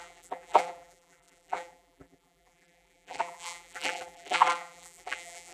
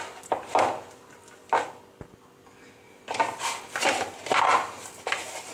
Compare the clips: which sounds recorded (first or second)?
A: second